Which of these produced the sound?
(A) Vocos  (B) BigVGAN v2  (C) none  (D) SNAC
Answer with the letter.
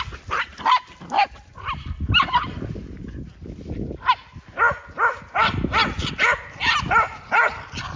C